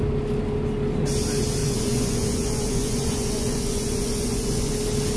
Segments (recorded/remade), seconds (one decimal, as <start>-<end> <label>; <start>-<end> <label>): 0.0-1.6 recorded; 1.6-4.7 remade; 4.7-5.2 recorded